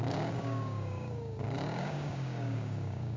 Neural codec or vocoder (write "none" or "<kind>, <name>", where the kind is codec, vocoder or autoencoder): codec, DAC